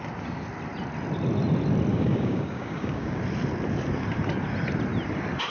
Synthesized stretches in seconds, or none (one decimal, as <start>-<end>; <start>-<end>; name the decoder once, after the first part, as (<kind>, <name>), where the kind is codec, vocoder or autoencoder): 1.9-3.2 (codec, DAC)

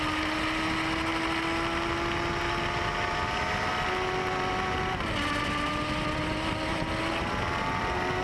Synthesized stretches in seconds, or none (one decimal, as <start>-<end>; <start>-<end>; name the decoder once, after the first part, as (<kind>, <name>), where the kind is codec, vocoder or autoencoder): none

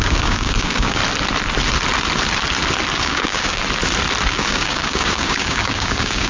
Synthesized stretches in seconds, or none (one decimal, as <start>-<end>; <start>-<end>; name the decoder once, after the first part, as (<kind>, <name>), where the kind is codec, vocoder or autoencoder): 0.0-1.0 (codec, DAC); 2.9-3.6; 4.3-6.3

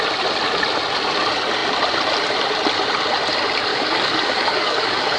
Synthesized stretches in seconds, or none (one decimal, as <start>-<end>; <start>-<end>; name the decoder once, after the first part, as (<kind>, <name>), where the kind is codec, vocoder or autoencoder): 3.7-5.2 (codec, DAC)